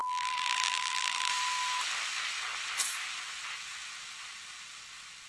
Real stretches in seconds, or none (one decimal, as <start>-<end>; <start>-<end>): 1.3-5.3